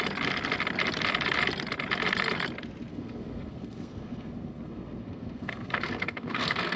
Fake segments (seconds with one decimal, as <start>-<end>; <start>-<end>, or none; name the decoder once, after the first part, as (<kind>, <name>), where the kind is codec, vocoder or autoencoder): 2.9-6.8 (codec, SNAC)